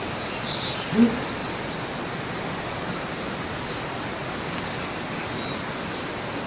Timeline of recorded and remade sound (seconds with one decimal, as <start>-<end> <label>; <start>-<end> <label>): 0.0-6.5 recorded